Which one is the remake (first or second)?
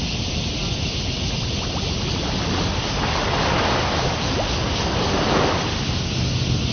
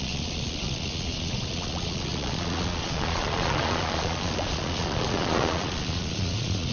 second